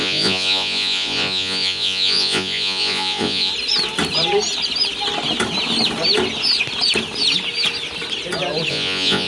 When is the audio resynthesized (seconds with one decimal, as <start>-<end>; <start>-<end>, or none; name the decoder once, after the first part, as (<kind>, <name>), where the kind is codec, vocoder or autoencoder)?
0.0-3.5 (vocoder, Vocos); 8.7-9.3

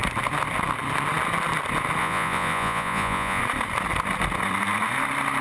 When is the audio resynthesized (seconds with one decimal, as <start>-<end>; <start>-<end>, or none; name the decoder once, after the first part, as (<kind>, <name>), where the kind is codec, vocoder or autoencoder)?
2.0-3.4 (vocoder, Vocos)

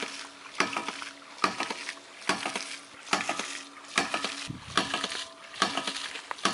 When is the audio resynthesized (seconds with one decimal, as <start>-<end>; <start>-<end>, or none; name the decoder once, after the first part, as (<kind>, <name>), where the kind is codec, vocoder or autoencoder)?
none

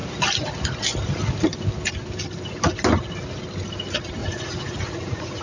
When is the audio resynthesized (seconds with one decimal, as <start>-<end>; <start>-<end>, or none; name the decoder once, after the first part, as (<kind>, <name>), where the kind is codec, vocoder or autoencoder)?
4.2-5.4 (vocoder, Vocos)